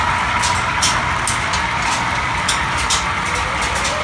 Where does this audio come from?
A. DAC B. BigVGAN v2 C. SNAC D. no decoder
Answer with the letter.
D